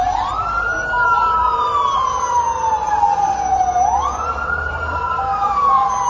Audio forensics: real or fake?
fake